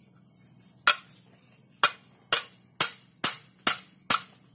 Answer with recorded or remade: recorded